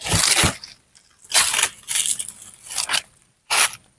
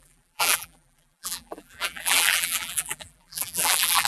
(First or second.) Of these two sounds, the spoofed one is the second